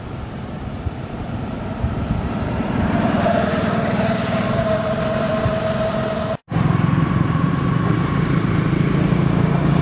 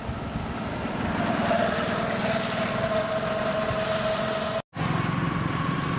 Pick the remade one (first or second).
first